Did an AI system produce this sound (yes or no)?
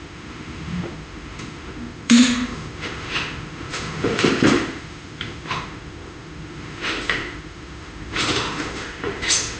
yes